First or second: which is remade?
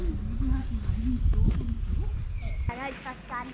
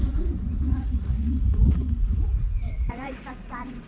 second